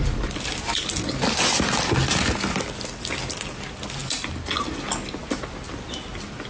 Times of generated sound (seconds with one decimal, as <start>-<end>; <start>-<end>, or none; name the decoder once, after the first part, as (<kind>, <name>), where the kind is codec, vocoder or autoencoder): none